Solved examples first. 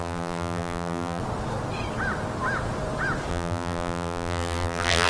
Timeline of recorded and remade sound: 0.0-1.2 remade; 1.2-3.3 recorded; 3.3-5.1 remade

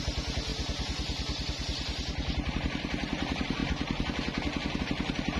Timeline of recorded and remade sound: 0.0-0.5 remade; 0.5-2.5 recorded; 2.5-3.6 remade; 3.6-4.8 recorded; 4.8-5.4 remade

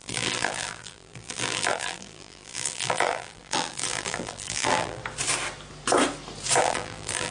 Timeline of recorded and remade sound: 0.0-5.0 remade; 5.0-6.6 recorded; 6.6-7.3 remade

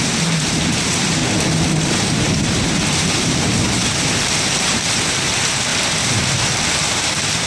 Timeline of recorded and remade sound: 0.0-1.2 remade; 1.2-2.1 recorded; 2.1-5.7 remade; 5.7-6.7 recorded; 6.7-7.5 remade